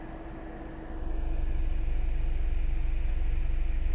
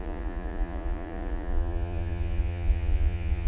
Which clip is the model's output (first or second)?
second